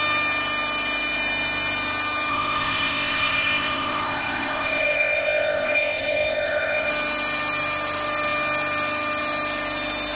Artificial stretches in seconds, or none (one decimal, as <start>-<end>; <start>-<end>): 2.3-6.9